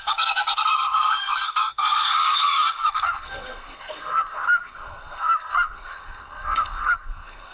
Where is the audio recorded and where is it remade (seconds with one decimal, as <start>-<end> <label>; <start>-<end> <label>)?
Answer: 0.0-7.5 remade